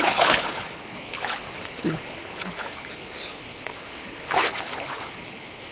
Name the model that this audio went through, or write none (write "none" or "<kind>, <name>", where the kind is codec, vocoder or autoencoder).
codec, HILCodec